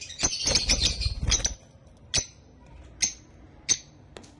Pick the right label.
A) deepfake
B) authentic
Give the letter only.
B